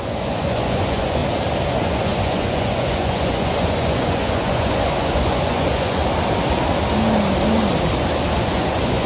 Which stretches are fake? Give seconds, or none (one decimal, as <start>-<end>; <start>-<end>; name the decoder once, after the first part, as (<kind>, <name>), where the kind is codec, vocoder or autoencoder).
0.0-1.2 (vocoder, Vocos); 1.7-6.0; 8.3-9.1